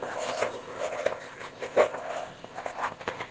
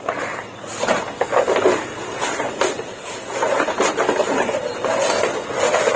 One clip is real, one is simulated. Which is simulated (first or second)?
first